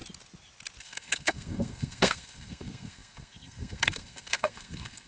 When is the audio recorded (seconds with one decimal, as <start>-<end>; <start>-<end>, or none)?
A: 0.0-0.8